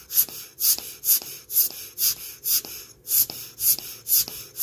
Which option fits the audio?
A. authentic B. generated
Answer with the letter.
A